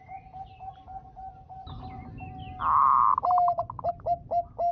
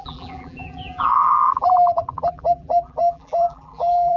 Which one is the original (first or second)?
first